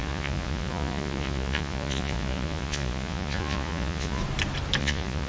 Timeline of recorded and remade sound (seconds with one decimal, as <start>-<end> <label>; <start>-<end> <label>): 0.0-4.2 remade; 4.2-4.8 recorded; 4.8-5.3 remade